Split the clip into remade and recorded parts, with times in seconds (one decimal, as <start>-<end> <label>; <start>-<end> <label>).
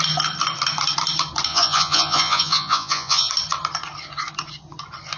0.0-1.5 recorded; 1.5-3.3 remade; 3.3-5.2 recorded